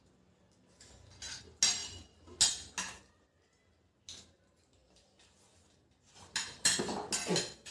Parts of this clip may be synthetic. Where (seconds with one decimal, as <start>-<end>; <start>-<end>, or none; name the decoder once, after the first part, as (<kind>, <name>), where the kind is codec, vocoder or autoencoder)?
none